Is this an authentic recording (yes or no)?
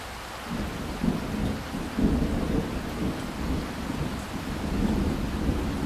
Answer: yes